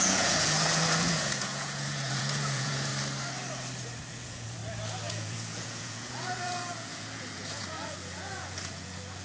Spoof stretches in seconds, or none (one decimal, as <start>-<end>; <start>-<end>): 0.0-2.9; 4.1-4.6; 5.1-9.2